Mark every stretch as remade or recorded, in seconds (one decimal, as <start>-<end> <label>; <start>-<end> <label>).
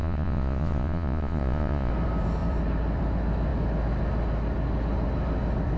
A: 0.0-1.9 remade; 1.9-5.8 recorded